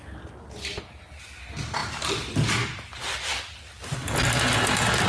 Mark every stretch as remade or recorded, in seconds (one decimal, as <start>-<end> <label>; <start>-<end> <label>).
0.0-1.8 recorded; 1.8-3.3 remade; 3.3-5.1 recorded